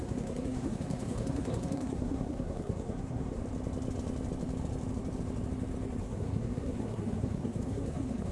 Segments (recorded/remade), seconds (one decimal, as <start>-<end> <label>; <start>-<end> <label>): 0.0-3.4 remade; 3.4-6.0 recorded; 6.0-8.3 remade